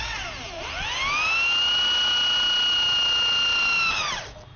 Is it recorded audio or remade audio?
recorded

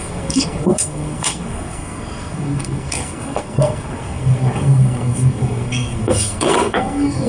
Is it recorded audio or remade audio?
remade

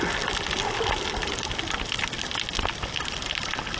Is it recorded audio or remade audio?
recorded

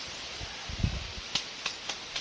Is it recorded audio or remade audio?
recorded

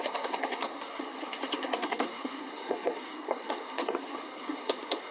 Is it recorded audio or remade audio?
remade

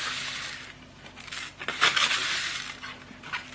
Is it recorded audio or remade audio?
recorded